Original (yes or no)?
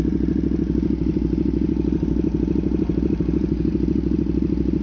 yes